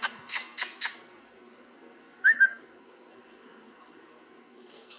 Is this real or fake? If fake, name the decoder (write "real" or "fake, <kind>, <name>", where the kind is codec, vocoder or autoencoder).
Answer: fake, codec, SNAC